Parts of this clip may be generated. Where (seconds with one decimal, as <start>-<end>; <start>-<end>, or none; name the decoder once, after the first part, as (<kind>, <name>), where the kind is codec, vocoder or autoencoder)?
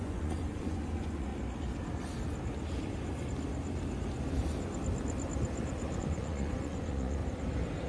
0.0-1.3 (vocoder, Vocos); 6.0-7.2